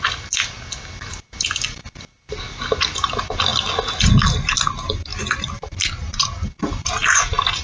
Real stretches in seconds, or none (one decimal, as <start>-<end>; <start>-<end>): 0.0-7.6